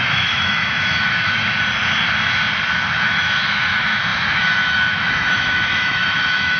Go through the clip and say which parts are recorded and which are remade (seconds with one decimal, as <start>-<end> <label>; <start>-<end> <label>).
0.0-1.4 remade; 1.4-2.9 recorded; 2.9-6.6 remade